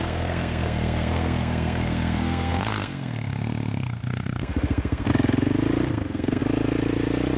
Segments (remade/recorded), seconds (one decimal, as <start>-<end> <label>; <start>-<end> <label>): 0.0-5.1 remade; 5.1-5.8 recorded; 5.8-6.4 remade; 6.4-7.4 recorded